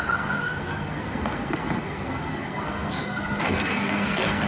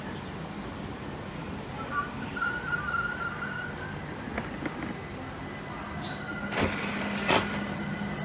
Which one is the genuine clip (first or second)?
second